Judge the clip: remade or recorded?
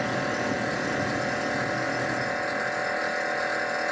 recorded